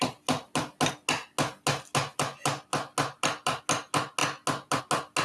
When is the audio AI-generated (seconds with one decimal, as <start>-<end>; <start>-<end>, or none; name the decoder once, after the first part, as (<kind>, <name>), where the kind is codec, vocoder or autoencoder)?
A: none

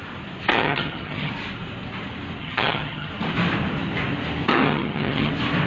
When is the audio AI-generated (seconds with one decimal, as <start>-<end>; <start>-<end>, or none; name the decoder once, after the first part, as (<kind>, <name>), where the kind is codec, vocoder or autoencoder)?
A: 0.5-1.3 (vocoder, HiFi-GAN); 2.4-3.1; 4.5-5.3

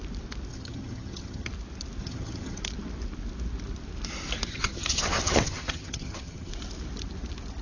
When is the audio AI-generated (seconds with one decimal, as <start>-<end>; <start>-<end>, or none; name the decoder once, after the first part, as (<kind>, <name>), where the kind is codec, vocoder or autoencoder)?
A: 0.5-1.5 (vocoder, HiFi-GAN); 2.0-2.6; 4.5-6.5

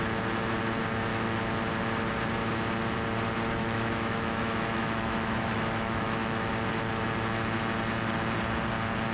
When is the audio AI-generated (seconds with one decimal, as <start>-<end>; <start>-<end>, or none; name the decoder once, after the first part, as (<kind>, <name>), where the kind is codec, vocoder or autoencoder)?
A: 1.1-1.6 (autoencoder, DAC-VAE); 3.6-6.5

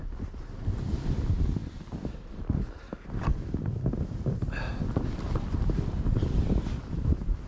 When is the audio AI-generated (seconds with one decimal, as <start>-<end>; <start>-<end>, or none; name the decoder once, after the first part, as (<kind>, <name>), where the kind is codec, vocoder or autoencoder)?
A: none

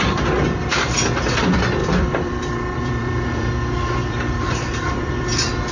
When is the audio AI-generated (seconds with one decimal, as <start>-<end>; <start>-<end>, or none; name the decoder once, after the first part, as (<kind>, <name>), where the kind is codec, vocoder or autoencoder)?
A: 0.0-5.7 (vocoder, BigVGAN v2)

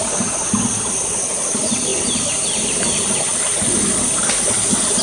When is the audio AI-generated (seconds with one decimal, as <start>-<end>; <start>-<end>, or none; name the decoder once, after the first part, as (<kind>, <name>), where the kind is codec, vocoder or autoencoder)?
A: none